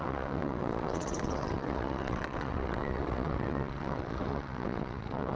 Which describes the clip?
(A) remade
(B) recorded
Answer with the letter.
A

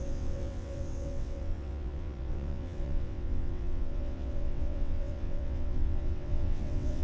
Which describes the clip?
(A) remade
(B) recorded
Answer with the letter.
A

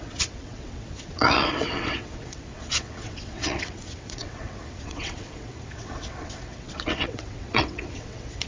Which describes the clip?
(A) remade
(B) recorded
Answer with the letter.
A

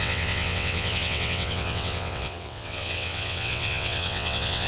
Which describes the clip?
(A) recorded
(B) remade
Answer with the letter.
B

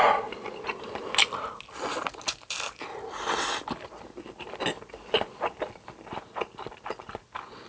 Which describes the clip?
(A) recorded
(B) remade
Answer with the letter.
A